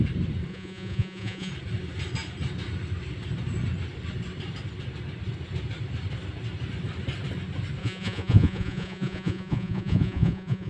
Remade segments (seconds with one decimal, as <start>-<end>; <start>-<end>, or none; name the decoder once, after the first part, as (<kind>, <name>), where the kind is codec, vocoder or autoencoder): 0.5-1.5 (vocoder, Vocos); 7.8-10.7